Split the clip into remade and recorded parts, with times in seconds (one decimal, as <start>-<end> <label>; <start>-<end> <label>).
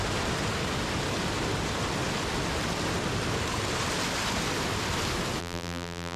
0.0-5.4 recorded; 5.4-6.2 remade